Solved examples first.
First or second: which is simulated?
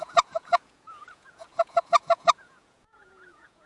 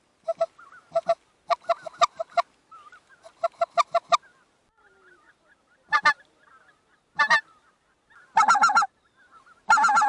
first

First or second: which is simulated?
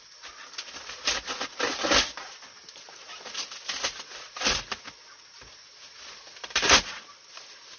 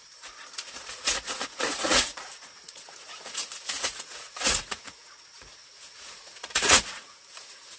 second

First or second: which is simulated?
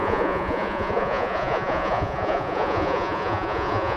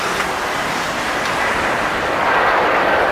first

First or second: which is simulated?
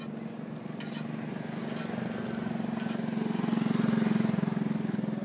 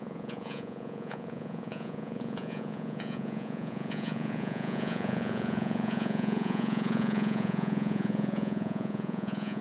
second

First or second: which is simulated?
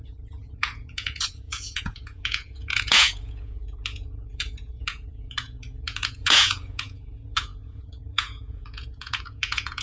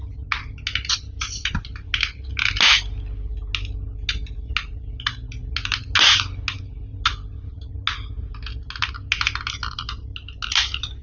first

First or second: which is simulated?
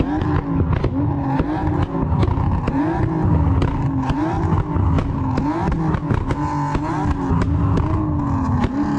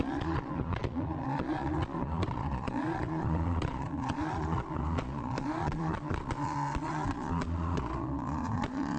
second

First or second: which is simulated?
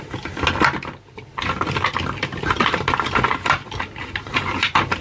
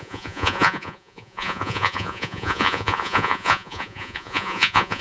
second